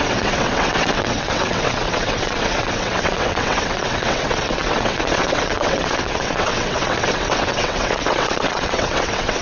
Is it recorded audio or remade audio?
remade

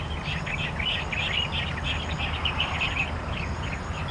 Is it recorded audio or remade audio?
recorded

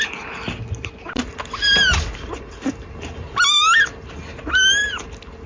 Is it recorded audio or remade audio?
recorded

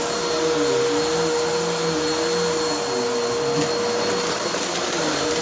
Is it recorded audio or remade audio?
recorded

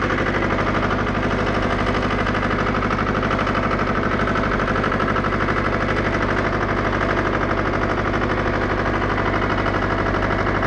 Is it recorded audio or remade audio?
recorded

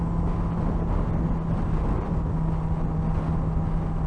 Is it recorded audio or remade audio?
recorded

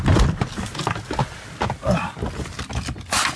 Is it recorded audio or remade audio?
recorded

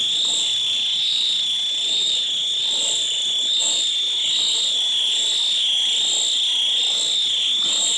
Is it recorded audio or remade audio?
recorded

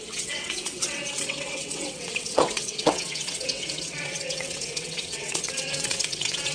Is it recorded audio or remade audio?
remade